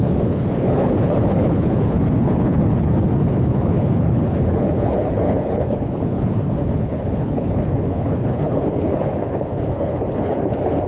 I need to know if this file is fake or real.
fake